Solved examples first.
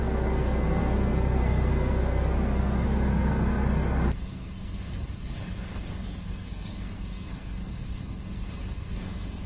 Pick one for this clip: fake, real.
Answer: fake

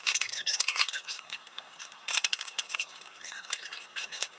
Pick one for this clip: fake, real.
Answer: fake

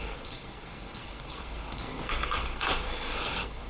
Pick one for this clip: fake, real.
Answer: fake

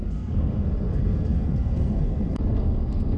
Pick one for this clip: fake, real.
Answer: fake